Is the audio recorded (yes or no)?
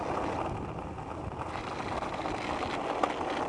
yes